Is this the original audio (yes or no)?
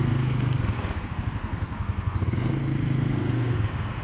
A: no